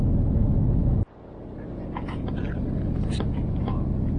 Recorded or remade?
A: recorded